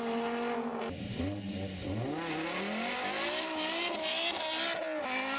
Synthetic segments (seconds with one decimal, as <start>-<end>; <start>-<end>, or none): none